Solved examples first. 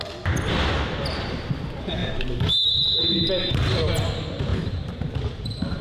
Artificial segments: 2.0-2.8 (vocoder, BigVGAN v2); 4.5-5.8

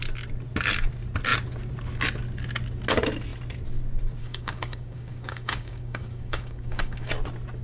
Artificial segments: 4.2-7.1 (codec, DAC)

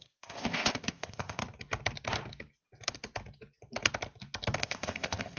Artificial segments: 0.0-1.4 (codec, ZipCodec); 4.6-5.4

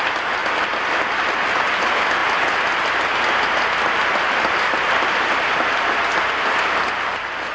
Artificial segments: none

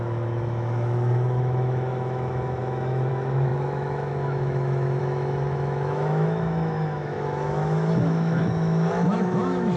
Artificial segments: 0.0-9.8 (autoencoder, DAC-VAE)

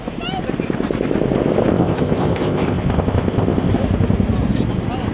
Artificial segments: 1.7-3.7 (codec, ZipCodec)